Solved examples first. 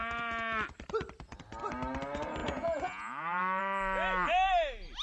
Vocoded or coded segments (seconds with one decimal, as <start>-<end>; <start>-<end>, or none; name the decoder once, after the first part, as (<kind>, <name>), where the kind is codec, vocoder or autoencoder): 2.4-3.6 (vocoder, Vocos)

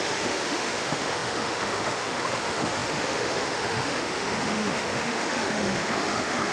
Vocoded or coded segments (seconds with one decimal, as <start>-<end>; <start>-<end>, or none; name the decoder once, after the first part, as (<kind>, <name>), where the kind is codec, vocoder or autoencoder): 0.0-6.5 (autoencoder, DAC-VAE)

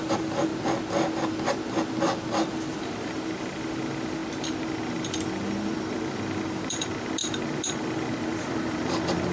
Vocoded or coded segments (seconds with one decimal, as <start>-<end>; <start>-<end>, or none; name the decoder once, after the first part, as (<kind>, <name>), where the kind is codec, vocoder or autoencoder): 0.0-0.5 (vocoder, BigVGAN v2); 2.5-4.2; 4.9-9.3

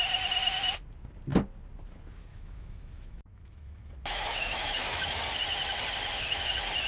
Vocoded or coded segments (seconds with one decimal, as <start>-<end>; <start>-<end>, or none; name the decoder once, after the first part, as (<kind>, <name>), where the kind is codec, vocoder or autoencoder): 2.3-5.2 (autoencoder, DAC-VAE)

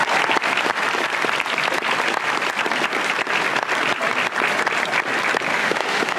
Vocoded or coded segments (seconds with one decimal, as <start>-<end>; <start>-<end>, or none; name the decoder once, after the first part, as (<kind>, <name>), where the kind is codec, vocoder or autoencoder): 5.5-6.2 (autoencoder, DAC-VAE)

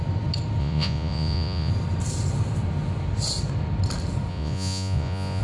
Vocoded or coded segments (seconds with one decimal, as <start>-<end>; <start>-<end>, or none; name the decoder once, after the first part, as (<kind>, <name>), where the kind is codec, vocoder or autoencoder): 0.6-1.7 (vocoder, Vocos); 4.3-5.4